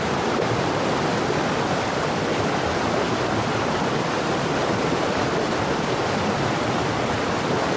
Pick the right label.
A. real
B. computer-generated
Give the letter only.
B